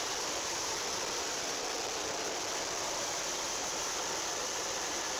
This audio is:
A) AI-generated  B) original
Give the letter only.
A